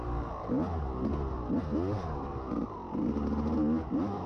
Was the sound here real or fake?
real